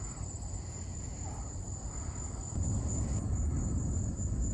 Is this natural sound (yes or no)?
yes